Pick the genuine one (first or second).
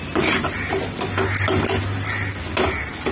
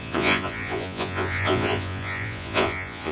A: first